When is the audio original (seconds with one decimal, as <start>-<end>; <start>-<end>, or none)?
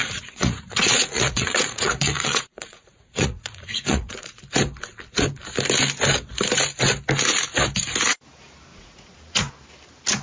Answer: 4.4-8.7; 9.5-10.2